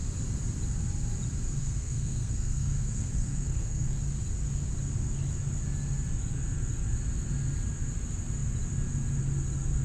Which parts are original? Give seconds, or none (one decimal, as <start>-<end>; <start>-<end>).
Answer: 0.0-1.6; 4.0-9.8